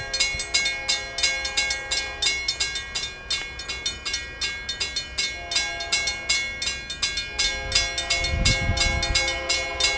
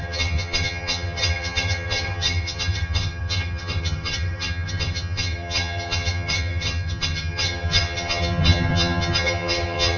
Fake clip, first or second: second